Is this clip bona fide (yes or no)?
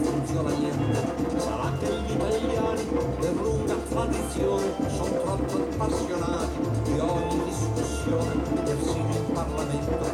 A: yes